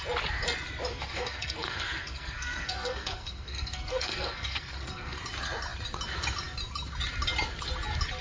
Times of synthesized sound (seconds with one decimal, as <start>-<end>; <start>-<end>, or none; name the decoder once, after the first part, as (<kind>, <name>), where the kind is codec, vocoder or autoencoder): 0.9-5.2 (codec, SNAC)